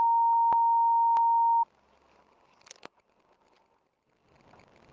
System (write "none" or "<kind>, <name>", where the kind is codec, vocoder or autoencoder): none